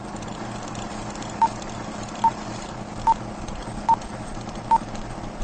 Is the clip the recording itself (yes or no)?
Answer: yes